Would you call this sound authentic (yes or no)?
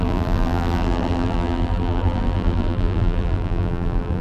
no